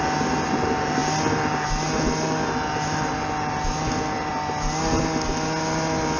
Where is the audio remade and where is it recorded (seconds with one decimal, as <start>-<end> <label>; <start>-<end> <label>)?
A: 0.0-6.2 recorded